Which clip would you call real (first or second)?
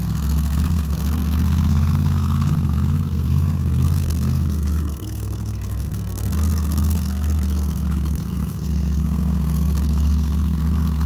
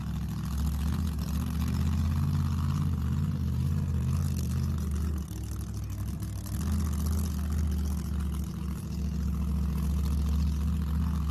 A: second